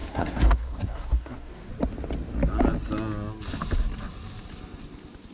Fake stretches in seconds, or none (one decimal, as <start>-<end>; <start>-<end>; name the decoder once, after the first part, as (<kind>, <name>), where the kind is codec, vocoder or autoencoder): 0.0-1.7 (codec, SNAC)